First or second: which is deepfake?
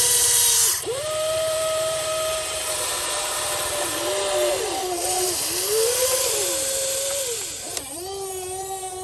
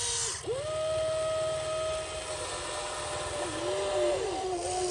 first